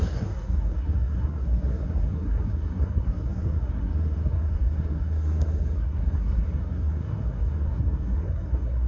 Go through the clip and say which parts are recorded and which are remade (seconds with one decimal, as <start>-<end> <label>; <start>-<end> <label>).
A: 0.0-8.9 remade